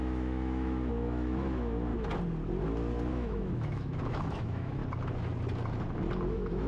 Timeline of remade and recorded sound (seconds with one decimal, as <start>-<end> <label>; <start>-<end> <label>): 0.0-1.9 remade; 1.9-3.1 recorded; 3.1-4.8 remade; 4.8-6.3 recorded; 6.3-6.7 remade